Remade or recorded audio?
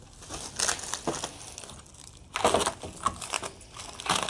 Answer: recorded